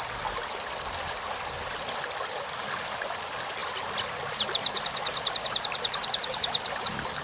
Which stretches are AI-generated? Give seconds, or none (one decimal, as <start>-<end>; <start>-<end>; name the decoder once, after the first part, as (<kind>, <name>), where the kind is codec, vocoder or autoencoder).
3.6-7.2 (vocoder, BigVGAN v2)